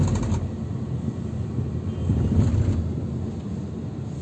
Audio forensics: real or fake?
real